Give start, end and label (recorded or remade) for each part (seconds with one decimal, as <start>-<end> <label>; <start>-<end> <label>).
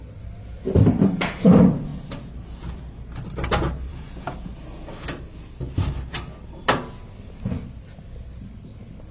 0.0-3.9 recorded; 3.9-4.5 remade; 4.5-9.1 recorded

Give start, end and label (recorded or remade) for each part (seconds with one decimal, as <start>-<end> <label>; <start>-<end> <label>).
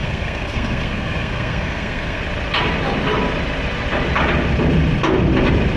0.0-2.2 remade; 2.2-5.8 recorded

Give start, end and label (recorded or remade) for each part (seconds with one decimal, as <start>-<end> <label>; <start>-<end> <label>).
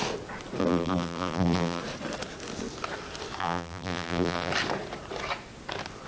0.0-0.6 recorded; 0.6-1.8 remade; 1.8-3.4 recorded; 3.4-4.5 remade; 4.5-6.1 recorded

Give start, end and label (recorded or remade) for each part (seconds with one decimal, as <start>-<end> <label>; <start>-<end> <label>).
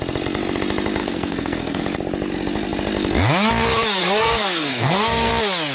0.0-1.0 recorded; 1.0-1.8 remade; 1.8-4.0 recorded; 4.0-5.3 remade; 5.3-5.7 recorded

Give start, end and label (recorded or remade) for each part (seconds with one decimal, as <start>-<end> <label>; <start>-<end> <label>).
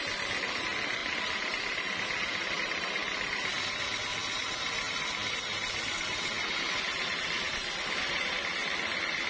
0.0-9.3 recorded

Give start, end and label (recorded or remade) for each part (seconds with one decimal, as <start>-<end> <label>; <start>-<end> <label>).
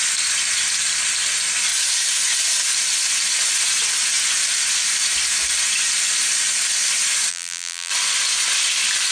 0.0-7.3 recorded; 7.3-7.9 remade; 7.9-9.1 recorded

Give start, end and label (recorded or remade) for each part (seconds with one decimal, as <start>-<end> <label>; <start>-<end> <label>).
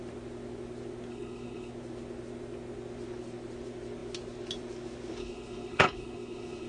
0.0-1.1 recorded; 1.1-1.7 remade; 1.7-5.2 recorded; 5.2-6.7 remade